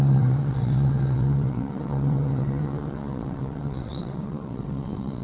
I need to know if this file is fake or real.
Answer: fake